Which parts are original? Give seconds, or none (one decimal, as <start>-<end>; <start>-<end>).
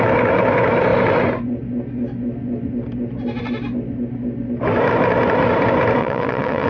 0.0-6.0